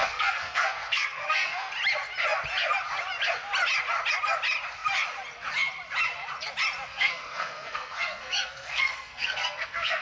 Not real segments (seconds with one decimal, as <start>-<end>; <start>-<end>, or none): 0.0-1.7; 6.9-10.0